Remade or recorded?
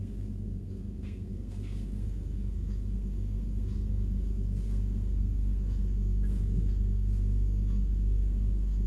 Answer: remade